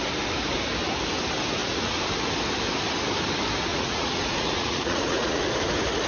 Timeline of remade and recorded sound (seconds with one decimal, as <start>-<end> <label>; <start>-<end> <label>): 0.0-1.6 recorded; 1.6-2.1 remade; 2.1-3.7 recorded; 3.7-5.4 remade; 5.4-6.1 recorded